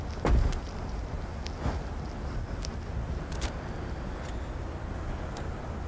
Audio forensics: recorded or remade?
recorded